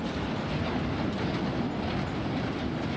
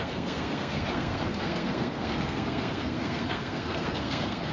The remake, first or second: second